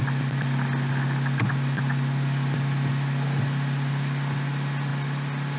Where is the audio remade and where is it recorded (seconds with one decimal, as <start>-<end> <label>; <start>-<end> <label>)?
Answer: 0.0-5.6 recorded